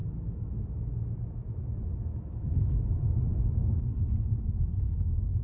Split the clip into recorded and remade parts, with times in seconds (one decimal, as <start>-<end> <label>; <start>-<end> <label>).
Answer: 0.0-3.2 remade; 3.2-5.4 recorded